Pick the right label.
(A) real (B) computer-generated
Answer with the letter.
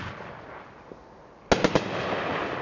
A